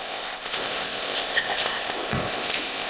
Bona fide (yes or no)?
no